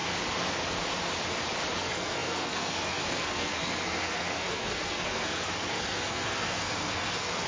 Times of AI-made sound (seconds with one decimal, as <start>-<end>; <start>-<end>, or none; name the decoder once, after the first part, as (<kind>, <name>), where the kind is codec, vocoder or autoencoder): 1.8-7.5 (codec, SNAC)